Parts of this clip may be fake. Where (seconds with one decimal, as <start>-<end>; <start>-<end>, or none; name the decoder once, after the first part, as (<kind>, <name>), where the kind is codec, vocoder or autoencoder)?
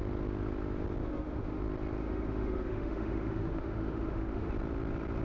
1.0-1.6 (autoencoder, DAC-VAE); 2.0-4.5